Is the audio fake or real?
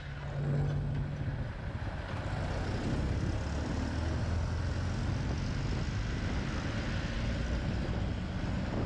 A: real